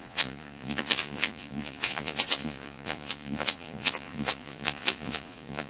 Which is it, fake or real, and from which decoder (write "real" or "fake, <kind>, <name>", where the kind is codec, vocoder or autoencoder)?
fake, vocoder, Vocos